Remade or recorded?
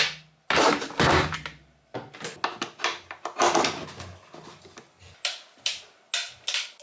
recorded